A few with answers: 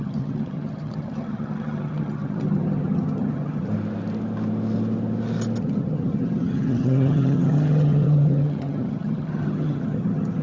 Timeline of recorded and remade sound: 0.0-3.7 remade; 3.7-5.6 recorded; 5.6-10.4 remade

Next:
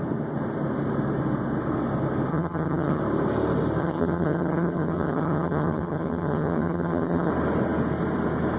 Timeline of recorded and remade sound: 0.0-2.3 recorded; 2.3-3.0 remade; 3.0-3.8 recorded; 3.8-7.3 remade; 7.3-8.6 recorded